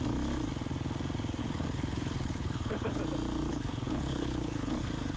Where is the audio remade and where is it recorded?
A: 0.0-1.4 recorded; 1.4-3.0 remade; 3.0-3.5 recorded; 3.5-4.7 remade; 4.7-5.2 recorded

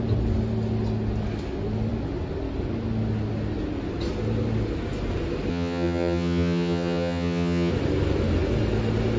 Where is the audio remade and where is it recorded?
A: 0.0-5.5 recorded; 5.5-7.7 remade; 7.7-9.2 recorded

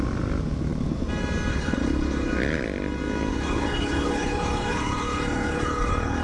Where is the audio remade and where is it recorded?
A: 0.0-1.5 recorded; 1.5-2.3 remade; 2.3-3.3 recorded; 3.3-6.2 remade